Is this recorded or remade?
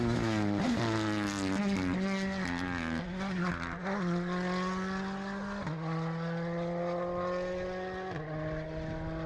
recorded